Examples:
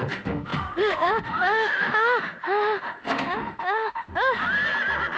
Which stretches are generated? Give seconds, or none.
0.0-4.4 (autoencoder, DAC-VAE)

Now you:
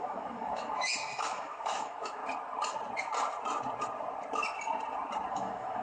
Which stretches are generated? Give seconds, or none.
0.0-2.2 (autoencoder, DAC-VAE); 5.3-5.8